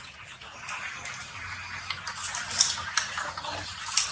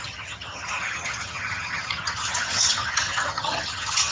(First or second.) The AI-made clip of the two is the second